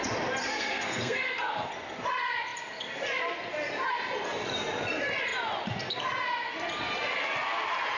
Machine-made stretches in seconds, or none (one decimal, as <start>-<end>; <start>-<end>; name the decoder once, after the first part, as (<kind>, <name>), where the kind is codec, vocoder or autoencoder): 0.4-1.7 (codec, SNAC)